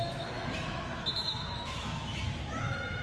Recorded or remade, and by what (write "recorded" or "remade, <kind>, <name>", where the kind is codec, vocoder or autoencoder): remade, autoencoder, DAC-VAE